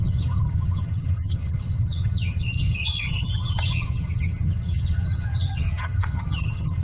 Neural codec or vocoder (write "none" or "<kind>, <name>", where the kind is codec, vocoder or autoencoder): vocoder, HiFi-GAN